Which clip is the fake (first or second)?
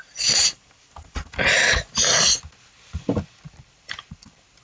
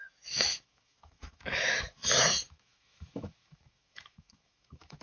second